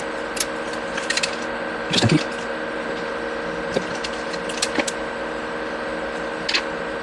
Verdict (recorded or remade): recorded